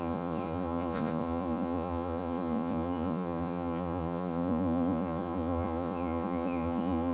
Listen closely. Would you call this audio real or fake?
fake